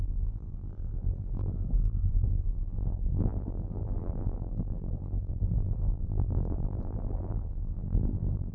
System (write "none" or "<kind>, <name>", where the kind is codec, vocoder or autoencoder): vocoder, BigVGAN v2